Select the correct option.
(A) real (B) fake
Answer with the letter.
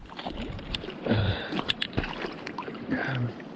B